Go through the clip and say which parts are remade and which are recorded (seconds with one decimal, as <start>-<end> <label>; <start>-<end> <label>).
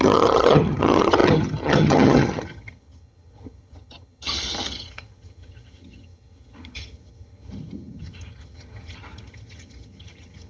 0.0-10.5 remade